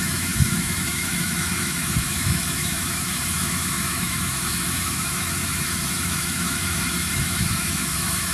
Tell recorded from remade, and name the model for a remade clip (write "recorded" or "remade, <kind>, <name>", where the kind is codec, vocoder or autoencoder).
remade, autoencoder, DAC-VAE